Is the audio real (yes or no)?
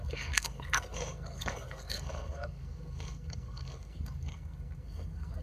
no